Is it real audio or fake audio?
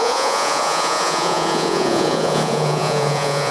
fake